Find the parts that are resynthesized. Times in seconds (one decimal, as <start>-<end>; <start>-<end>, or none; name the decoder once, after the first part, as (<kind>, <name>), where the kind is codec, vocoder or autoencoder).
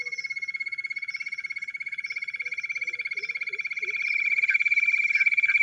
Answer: 1.7-5.1 (vocoder, BigVGAN v2)